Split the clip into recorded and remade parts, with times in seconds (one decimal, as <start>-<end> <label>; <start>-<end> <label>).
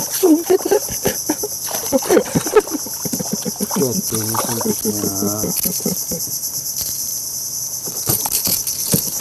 0.0-1.2 remade; 1.2-5.0 recorded; 5.0-7.1 remade; 7.1-7.6 recorded; 7.6-9.2 remade